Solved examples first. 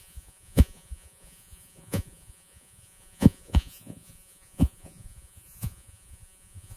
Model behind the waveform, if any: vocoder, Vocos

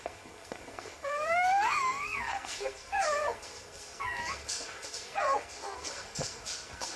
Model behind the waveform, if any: codec, SNAC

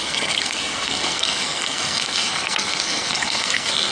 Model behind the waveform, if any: codec, SNAC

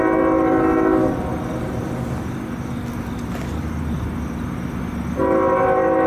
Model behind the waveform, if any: none